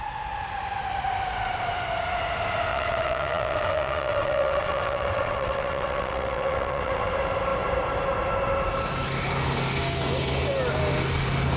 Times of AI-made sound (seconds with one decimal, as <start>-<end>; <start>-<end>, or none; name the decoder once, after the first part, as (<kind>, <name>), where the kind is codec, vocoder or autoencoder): 2.7-7.1 (vocoder, WaveNeXt)